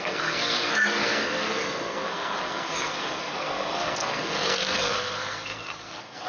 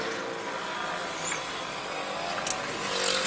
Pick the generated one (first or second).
first